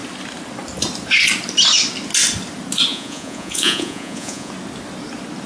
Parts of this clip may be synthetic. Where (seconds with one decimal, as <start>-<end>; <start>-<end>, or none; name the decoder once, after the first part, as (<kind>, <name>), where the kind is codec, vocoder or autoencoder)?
2.9-4.5 (vocoder, Vocos)